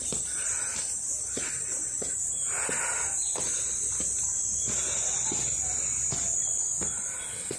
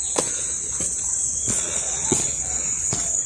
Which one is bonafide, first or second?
first